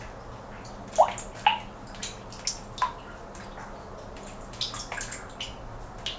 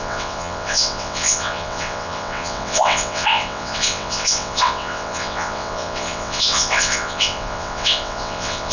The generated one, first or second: second